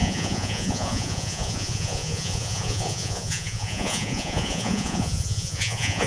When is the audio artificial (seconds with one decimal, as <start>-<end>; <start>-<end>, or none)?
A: 0.0-6.1